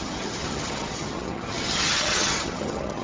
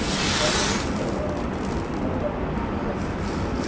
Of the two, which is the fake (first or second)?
first